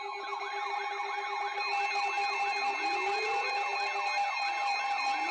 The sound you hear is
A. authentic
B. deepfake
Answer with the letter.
A